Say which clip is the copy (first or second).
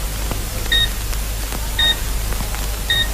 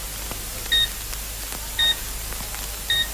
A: first